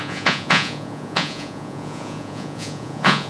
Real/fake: fake